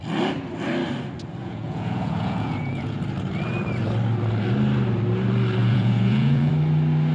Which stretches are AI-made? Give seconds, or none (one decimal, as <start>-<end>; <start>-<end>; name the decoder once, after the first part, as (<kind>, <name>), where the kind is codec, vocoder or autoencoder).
1.4-3.0 (vocoder, Vocos); 5.6-6.5